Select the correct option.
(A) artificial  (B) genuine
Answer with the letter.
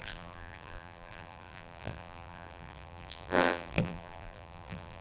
A